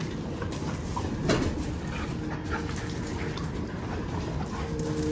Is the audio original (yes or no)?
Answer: yes